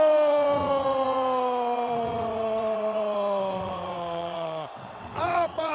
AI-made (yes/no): yes